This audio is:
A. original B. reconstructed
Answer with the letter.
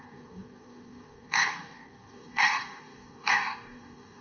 B